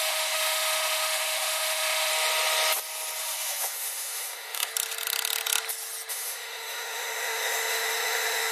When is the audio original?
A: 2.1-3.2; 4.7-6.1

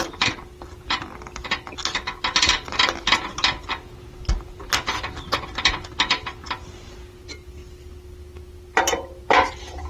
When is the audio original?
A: 0.0-9.9

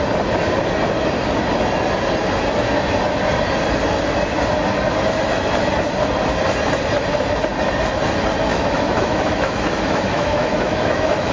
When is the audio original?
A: 0.0-8.5